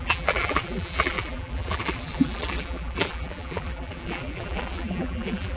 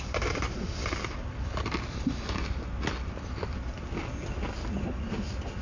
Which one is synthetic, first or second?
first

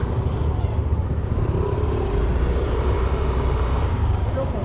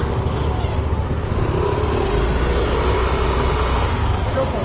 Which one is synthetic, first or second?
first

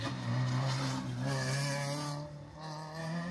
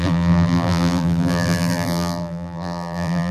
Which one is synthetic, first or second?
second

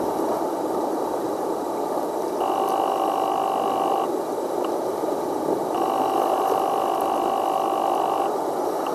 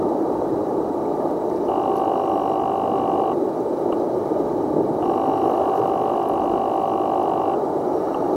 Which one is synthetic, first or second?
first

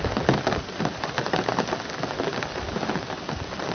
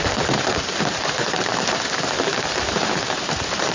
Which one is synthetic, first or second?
second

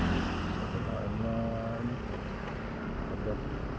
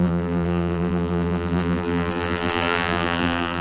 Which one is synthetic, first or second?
second